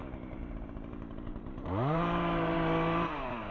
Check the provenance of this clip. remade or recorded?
remade